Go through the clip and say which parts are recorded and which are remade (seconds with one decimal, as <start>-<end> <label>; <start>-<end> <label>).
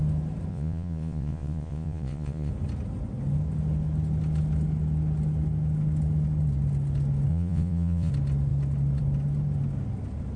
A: 0.0-0.5 recorded; 0.5-2.5 remade; 2.5-7.3 recorded; 7.3-8.1 remade; 8.1-10.4 recorded